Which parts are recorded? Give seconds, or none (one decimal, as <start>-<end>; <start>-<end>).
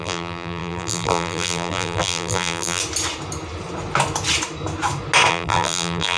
2.8-5.3